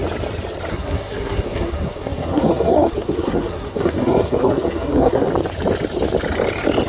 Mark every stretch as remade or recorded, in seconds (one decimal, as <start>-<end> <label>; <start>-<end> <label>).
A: 0.0-0.7 recorded; 0.7-5.3 remade; 5.3-6.9 recorded